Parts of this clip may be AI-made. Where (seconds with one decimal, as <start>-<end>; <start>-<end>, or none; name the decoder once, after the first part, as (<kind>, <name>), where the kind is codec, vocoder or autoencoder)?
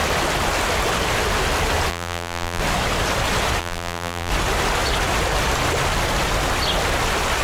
1.9-2.6 (vocoder, BigVGAN v2); 3.6-4.3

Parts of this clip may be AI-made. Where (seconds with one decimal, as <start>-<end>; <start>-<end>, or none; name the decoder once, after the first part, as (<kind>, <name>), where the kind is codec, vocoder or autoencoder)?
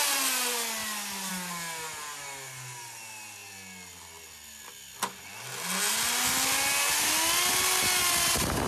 none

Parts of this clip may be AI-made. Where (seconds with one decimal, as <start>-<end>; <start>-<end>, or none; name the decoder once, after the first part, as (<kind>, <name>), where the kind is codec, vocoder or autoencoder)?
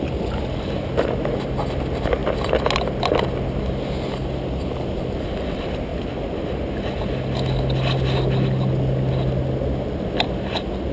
none